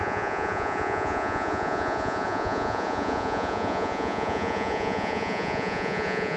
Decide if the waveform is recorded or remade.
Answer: remade